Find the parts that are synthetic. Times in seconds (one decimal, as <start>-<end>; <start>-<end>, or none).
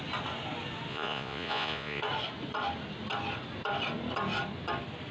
0.9-2.0